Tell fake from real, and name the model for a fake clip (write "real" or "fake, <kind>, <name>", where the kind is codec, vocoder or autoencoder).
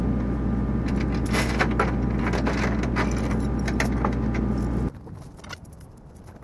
real